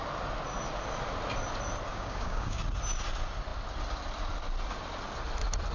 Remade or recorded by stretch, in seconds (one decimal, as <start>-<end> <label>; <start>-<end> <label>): 0.0-1.9 recorded; 1.9-2.6 remade; 2.6-5.7 recorded